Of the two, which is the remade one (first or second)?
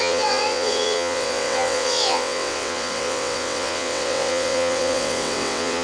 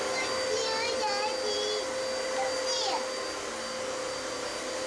first